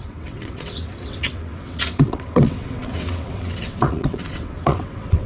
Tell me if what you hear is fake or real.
fake